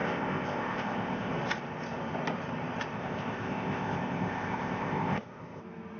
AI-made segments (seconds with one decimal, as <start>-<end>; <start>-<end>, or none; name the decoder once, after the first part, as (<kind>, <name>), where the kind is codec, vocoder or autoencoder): 0.0-1.3 (codec, ZipCodec); 2.9-5.6